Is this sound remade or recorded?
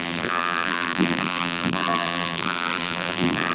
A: remade